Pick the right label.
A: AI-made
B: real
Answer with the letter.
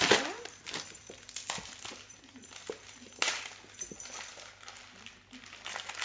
B